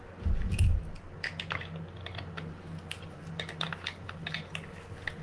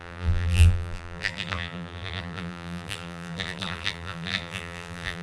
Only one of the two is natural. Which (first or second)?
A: first